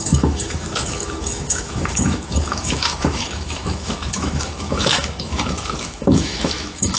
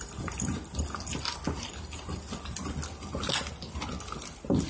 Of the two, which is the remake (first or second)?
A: first